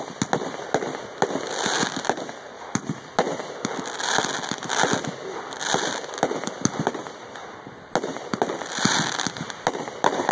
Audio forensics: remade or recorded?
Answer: recorded